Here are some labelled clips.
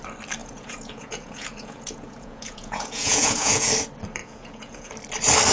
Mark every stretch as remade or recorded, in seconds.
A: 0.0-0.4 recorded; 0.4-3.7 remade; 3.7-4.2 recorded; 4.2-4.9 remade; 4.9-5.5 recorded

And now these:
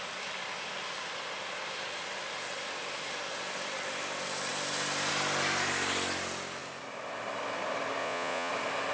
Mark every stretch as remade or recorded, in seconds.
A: 0.0-8.0 recorded; 8.0-8.5 remade; 8.5-8.9 recorded

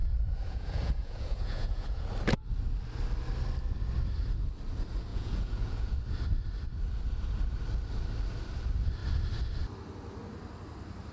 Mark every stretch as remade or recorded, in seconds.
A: 0.0-2.1 remade; 2.1-5.1 recorded; 5.1-6.0 remade; 6.0-11.1 recorded

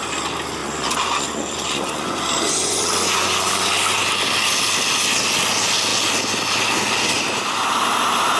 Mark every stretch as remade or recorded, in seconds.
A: 0.0-0.6 recorded; 0.6-3.7 remade; 3.7-8.4 recorded

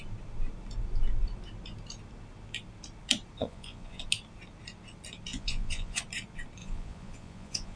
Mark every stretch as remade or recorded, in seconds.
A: 0.0-3.4 recorded; 3.4-4.0 remade; 4.0-5.3 recorded; 5.3-6.0 remade; 6.0-6.6 recorded; 6.6-7.8 remade

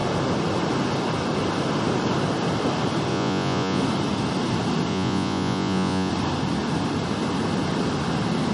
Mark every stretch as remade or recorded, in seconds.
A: 0.0-3.1 recorded; 3.1-3.8 remade; 3.8-4.9 recorded; 4.9-6.1 remade; 6.1-8.5 recorded